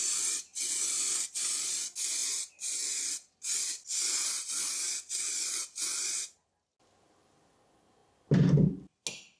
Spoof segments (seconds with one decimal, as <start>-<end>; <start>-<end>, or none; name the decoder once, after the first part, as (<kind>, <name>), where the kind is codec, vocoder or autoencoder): none